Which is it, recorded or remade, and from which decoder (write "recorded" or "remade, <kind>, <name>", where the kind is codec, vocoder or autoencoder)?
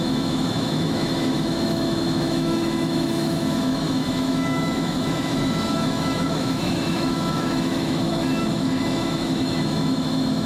remade, autoencoder, DAC-VAE